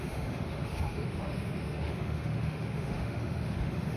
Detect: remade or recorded remade